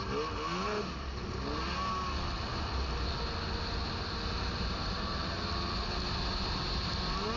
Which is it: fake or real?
real